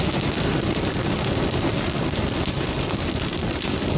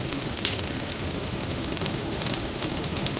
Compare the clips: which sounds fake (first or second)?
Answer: second